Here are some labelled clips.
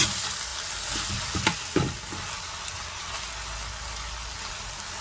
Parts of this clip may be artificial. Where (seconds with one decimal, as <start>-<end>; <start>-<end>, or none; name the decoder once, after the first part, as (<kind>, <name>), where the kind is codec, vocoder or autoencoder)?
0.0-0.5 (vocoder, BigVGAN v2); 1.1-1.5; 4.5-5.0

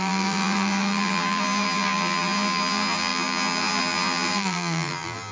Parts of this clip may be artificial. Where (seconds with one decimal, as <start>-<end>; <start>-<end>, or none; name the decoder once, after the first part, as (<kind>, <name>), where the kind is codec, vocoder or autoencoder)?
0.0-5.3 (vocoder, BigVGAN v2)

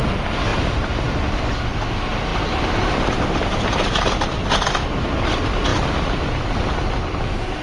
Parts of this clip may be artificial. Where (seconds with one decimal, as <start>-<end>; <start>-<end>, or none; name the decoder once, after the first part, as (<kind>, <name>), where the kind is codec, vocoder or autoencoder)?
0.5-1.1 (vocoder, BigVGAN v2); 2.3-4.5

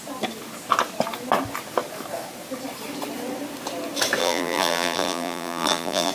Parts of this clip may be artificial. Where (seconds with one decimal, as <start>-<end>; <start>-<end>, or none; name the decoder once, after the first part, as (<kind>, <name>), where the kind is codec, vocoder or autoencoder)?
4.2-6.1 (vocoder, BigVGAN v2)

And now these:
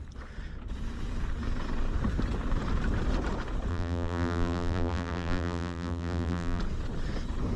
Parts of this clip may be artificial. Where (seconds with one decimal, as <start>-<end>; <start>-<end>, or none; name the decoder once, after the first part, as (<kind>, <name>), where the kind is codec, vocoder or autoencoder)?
3.7-6.6 (vocoder, BigVGAN v2)

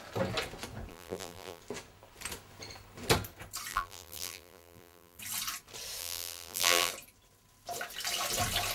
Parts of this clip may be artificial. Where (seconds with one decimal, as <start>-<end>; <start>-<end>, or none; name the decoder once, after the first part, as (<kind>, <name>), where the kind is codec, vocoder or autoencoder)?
0.9-1.6 (vocoder, BigVGAN v2); 3.7-5.2; 6.0-6.9

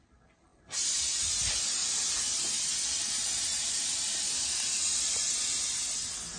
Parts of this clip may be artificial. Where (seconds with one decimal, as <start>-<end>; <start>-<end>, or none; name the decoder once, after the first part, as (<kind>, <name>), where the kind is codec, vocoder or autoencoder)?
0.5-1.0 (vocoder, BigVGAN v2); 1.8-2.3; 3.5-5.0